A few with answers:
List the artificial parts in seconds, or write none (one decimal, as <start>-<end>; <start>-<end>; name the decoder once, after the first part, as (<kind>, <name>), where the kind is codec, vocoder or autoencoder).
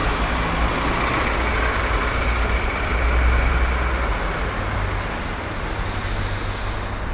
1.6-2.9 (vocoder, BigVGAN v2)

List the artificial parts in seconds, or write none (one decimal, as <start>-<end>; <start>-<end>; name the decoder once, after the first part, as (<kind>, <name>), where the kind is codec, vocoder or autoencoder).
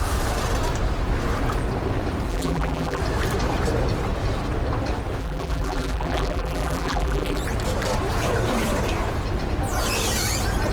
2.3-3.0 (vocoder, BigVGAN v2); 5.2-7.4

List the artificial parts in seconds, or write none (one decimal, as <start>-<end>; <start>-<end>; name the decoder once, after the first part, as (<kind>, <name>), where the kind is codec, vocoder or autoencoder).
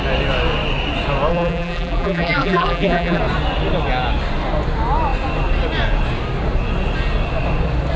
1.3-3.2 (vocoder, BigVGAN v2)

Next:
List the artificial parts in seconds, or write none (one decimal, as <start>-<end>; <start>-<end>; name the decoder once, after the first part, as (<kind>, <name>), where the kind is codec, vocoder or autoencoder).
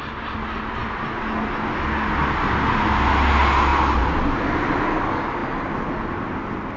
none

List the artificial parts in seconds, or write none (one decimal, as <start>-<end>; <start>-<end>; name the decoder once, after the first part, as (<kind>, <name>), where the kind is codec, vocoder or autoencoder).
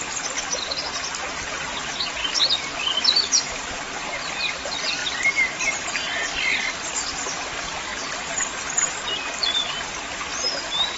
none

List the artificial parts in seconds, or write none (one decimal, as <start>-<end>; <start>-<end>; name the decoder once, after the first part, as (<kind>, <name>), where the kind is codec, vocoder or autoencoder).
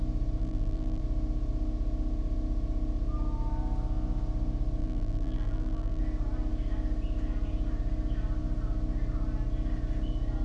0.4-1.0 (vocoder, BigVGAN v2); 4.8-6.0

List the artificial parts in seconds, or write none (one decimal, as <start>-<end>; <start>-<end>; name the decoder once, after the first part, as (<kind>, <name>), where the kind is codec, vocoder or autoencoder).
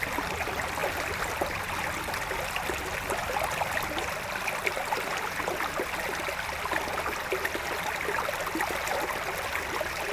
0.8-1.6 (vocoder, BigVGAN v2)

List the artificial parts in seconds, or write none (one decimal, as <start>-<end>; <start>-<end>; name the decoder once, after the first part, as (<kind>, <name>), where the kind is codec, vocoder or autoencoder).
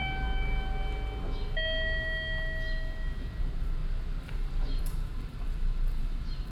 3.4-3.8 (vocoder, BigVGAN v2); 4.8-6.5